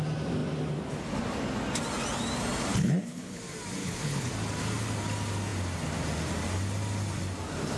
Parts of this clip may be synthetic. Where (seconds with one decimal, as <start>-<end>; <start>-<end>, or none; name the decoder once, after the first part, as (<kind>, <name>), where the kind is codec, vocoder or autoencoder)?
2.7-3.4 (codec, HILCodec); 3.8-4.3